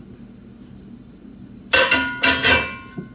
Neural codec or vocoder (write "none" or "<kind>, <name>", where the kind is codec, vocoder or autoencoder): none